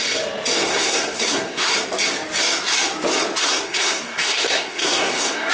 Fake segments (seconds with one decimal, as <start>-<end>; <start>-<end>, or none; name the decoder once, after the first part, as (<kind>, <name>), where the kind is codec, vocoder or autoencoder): 0.7-1.7 (codec, SNAC); 3.4-5.5

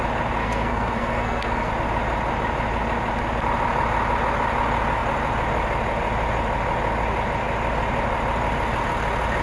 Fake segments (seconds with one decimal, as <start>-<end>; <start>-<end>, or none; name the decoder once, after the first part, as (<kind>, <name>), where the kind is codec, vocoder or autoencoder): 0.4-1.7 (codec, SNAC)

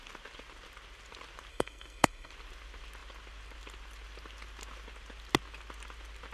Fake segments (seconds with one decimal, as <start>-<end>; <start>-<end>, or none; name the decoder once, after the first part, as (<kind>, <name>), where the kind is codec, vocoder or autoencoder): 1.5-2.3 (codec, SNAC)